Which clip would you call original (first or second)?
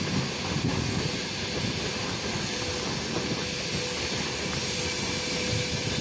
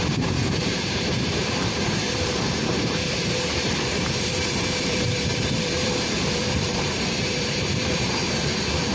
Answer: first